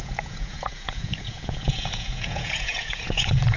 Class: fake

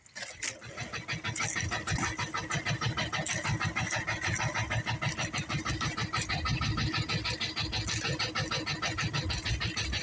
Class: real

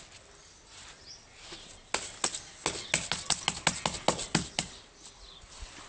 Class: real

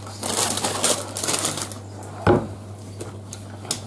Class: real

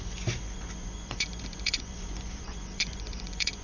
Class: fake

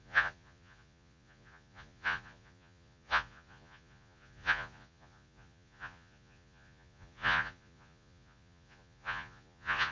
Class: fake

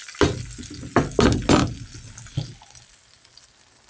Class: real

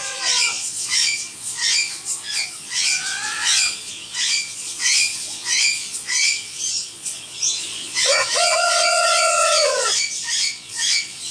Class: fake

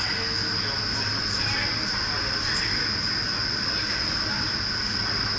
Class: real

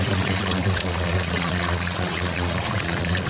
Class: fake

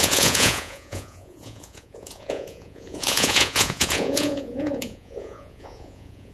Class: fake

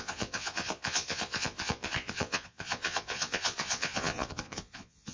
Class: fake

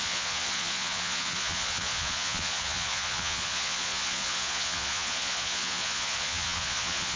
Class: fake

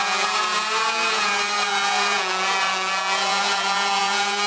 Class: fake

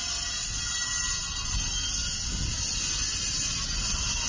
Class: real